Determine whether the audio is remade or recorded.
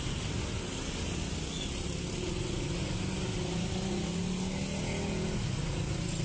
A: recorded